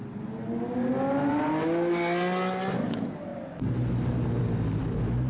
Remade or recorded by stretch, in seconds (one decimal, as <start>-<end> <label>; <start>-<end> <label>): 0.0-3.3 recorded; 3.3-4.4 remade; 4.4-5.3 recorded